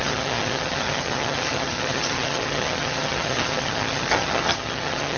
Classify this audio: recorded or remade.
remade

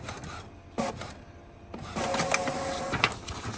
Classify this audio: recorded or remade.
recorded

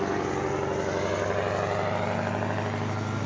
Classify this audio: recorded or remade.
recorded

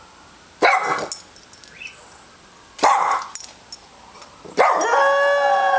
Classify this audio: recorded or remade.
recorded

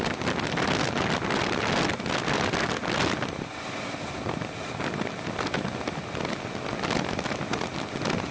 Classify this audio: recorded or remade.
recorded